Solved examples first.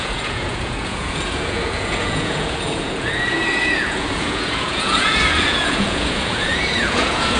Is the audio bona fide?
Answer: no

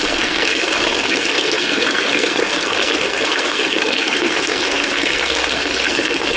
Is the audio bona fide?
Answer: no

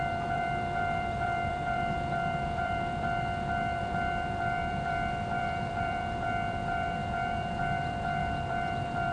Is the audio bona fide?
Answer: no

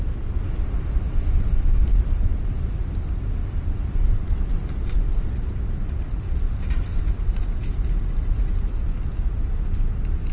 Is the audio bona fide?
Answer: yes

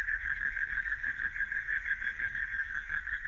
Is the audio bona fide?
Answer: no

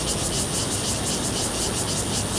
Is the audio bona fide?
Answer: yes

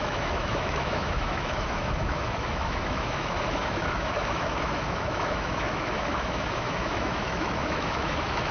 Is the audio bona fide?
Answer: no